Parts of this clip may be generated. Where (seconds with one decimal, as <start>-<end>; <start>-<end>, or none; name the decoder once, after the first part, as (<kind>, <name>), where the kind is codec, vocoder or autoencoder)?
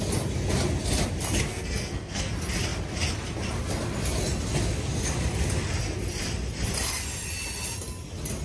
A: 1.5-2.3 (codec, SNAC)